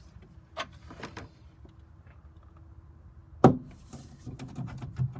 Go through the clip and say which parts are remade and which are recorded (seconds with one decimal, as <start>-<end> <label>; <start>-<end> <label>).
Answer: 0.0-5.2 recorded